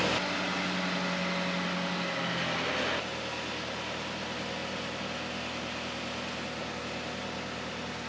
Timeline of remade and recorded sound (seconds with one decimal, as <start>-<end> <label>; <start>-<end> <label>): 0.0-8.1 recorded